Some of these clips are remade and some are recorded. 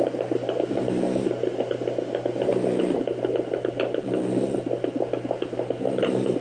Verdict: recorded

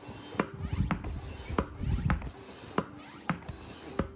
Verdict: recorded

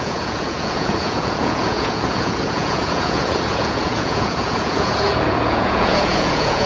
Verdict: remade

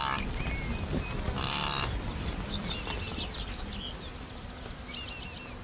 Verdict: recorded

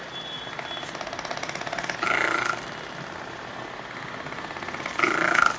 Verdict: recorded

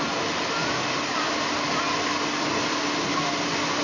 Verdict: recorded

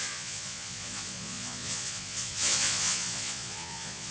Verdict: remade